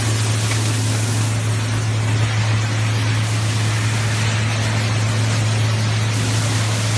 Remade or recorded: recorded